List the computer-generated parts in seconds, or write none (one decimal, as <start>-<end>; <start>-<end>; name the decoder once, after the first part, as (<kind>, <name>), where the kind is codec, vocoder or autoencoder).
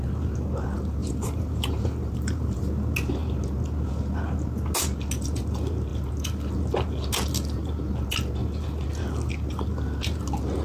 1.0-2.7 (vocoder, BigVGAN v2)